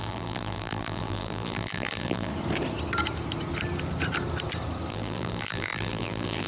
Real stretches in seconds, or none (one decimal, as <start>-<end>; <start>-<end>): 2.3-4.9